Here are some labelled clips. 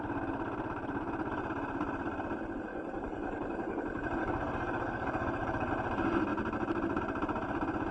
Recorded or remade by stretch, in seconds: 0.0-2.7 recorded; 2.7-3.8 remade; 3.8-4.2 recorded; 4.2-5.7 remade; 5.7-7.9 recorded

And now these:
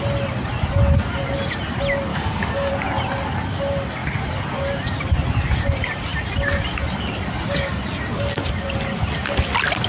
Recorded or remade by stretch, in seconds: 0.0-2.1 recorded; 2.1-2.7 remade; 2.7-9.9 recorded